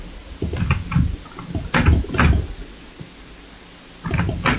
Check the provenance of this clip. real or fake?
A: real